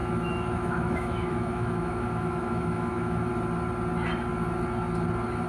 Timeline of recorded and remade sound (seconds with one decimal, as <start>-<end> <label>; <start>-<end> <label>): 0.0-3.3 remade; 3.3-5.5 recorded